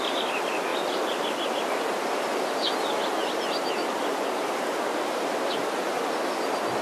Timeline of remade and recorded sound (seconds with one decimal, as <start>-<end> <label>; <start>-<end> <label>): 0.0-6.8 recorded